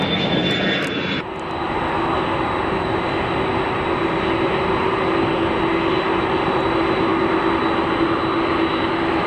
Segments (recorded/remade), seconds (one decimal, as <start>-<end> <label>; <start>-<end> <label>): 0.0-9.3 recorded